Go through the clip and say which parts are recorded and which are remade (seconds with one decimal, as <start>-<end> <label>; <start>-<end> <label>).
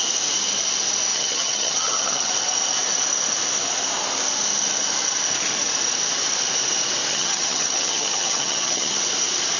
0.0-1.1 recorded; 1.1-2.3 remade; 2.3-7.1 recorded; 7.1-8.9 remade; 8.9-9.6 recorded